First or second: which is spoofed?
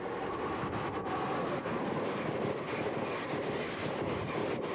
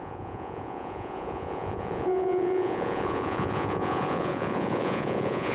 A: second